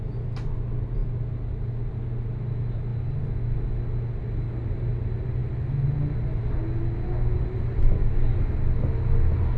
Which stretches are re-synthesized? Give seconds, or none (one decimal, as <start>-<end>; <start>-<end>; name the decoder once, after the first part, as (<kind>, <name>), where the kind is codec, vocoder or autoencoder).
none